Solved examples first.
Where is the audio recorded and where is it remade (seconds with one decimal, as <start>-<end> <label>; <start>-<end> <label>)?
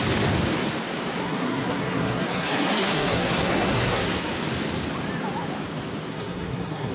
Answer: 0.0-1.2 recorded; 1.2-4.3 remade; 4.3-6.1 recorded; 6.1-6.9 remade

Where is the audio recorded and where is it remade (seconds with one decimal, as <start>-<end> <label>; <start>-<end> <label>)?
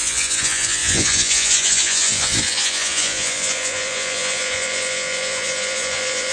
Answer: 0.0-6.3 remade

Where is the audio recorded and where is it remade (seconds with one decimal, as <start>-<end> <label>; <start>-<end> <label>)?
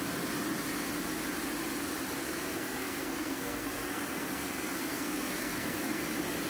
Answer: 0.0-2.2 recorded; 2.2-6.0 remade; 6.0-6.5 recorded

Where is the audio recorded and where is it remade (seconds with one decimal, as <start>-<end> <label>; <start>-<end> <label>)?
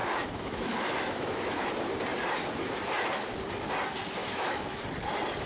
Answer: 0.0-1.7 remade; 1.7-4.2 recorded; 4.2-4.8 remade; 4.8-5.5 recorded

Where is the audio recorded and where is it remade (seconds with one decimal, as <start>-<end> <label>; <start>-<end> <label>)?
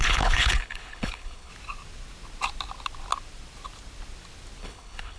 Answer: 0.0-1.5 remade; 1.5-4.6 recorded; 4.6-5.2 remade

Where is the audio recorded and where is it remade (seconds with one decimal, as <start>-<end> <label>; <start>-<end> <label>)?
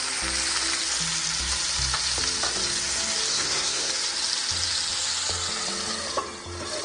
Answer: 0.0-3.3 recorded; 3.3-3.9 remade; 3.9-6.8 recorded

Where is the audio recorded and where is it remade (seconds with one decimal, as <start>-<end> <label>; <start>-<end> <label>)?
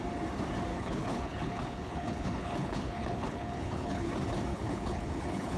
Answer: 0.0-0.7 recorded; 0.7-4.1 remade; 4.1-4.5 recorded; 4.5-5.6 remade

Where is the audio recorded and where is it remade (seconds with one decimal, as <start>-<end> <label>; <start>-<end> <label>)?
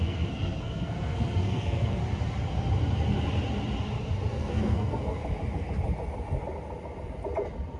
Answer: 0.0-2.0 remade; 2.0-4.3 recorded; 4.3-5.2 remade; 5.2-7.8 recorded